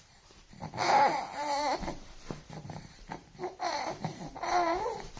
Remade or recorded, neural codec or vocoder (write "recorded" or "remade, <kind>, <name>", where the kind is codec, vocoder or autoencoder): remade, vocoder, BigVGAN v2